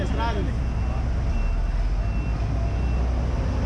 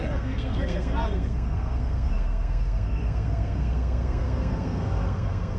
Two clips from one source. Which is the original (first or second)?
first